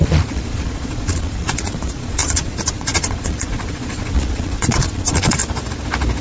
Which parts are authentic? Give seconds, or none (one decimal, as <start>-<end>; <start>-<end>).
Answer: 5.4-6.2